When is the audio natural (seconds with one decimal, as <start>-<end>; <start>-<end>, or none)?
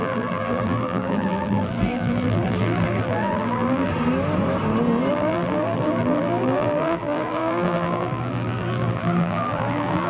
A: 3.9-5.1